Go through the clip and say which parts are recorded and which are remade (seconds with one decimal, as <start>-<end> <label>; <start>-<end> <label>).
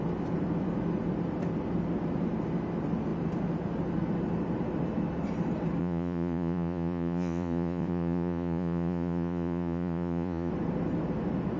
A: 0.0-5.8 recorded; 5.8-10.5 remade; 10.5-11.6 recorded